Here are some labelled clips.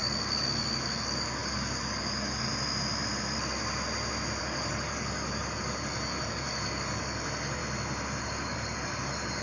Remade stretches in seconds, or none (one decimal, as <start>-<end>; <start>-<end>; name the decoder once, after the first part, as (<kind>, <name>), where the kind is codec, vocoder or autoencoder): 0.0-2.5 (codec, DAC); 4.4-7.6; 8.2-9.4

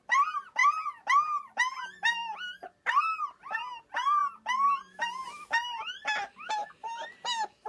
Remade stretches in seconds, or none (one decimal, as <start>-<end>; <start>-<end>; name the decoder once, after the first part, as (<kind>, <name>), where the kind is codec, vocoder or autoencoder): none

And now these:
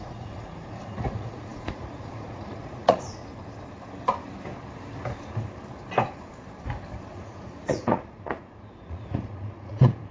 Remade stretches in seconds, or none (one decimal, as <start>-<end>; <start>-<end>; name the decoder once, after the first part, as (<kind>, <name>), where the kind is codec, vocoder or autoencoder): 0.0-3.2 (vocoder, Vocos); 7.1-10.1